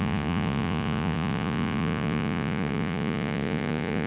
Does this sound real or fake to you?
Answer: fake